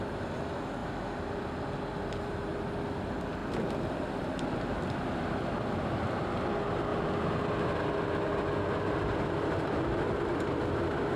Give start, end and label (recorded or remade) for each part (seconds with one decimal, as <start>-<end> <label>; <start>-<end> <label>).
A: 0.0-3.4 recorded; 3.4-6.5 remade; 6.5-6.9 recorded; 6.9-7.5 remade; 7.5-11.2 recorded